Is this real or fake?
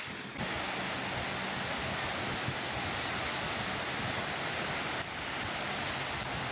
real